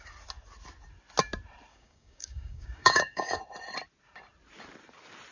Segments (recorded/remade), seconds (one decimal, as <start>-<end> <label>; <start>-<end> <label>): 0.0-1.7 recorded; 1.7-3.4 remade; 3.4-5.3 recorded